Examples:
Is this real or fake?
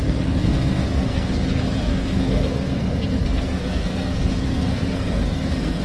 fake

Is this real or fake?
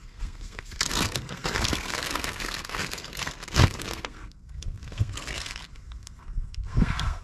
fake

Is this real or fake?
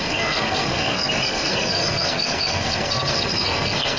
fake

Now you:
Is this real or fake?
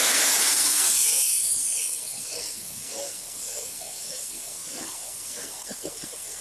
fake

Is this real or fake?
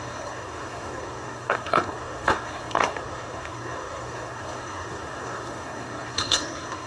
fake